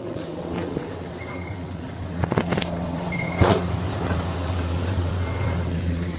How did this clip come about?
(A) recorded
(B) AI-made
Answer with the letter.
B